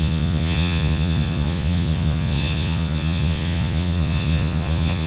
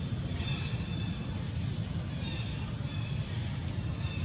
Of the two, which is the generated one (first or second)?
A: first